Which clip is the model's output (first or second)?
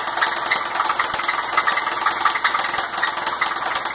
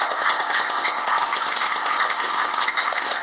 second